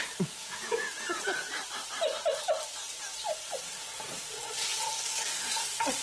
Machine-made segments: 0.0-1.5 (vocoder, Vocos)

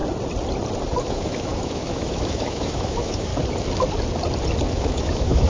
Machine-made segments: 1.0-3.3 (autoencoder, DAC-VAE); 4.7-5.5

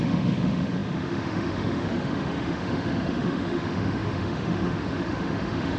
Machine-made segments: 0.0-5.8 (autoencoder, DAC-VAE)

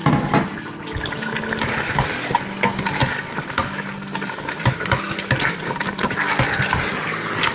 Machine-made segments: none

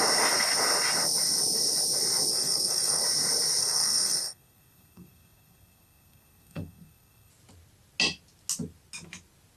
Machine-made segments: 2.3-3.0 (codec, SNAC); 3.6-7.3

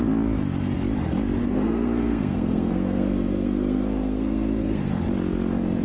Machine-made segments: 1.4-4.9 (codec, SNAC)

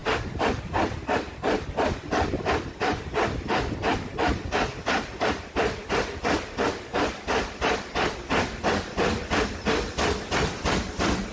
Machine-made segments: 6.9-9.9 (vocoder, BigVGAN v2)